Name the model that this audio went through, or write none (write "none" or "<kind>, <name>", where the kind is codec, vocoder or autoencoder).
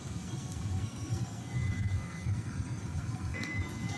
codec, SNAC